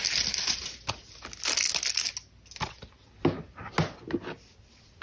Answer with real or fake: real